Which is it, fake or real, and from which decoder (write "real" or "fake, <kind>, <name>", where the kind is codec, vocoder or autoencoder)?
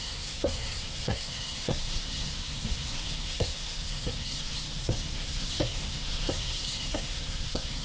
fake, codec, SNAC